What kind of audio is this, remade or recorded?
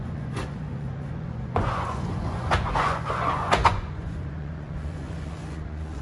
remade